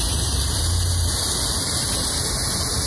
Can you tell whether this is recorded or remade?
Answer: recorded